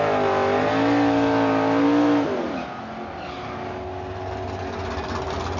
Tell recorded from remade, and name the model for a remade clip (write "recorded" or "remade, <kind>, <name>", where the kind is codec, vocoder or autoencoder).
recorded